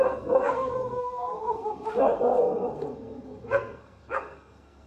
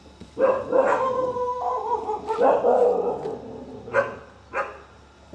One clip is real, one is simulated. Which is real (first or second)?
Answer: second